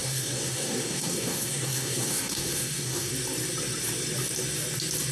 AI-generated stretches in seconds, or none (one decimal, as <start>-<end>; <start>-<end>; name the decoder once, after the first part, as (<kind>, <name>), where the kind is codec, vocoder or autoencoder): 0.0-3.1 (codec, SNAC)